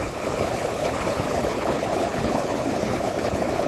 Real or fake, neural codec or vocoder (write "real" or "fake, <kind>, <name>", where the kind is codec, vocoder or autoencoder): fake, codec, HILCodec